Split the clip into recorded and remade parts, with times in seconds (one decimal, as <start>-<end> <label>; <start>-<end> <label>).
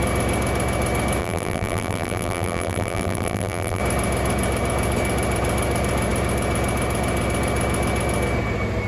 0.0-1.2 recorded; 1.2-3.8 remade; 3.8-8.9 recorded